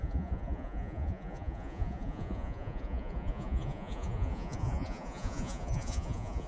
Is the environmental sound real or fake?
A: fake